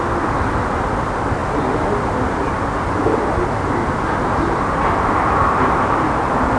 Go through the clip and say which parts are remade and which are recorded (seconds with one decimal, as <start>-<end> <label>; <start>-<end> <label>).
0.0-6.6 recorded